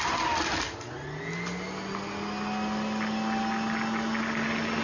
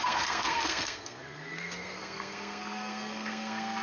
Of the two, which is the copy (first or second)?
second